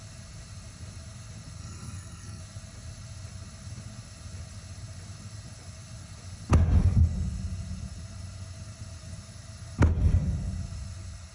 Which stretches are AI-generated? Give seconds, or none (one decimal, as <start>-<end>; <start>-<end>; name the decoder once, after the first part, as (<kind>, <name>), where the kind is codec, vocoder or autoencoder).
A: 1.6-2.4 (codec, SNAC)